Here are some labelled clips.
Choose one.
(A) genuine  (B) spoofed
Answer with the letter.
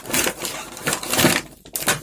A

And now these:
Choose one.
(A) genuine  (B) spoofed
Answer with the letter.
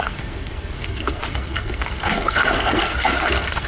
B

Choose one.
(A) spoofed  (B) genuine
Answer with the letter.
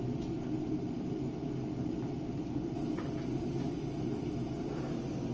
B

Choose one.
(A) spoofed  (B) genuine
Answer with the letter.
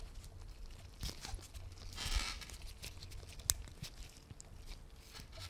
B